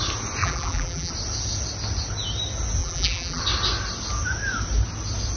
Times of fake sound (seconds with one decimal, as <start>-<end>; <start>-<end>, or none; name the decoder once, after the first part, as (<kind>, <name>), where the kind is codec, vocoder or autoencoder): 0.4-1.1 (vocoder, BigVGAN v2); 2.8-3.4